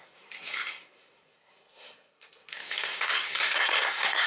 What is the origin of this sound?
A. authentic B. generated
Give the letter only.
B